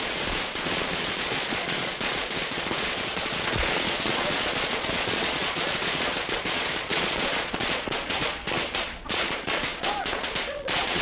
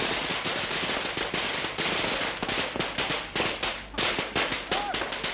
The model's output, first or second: first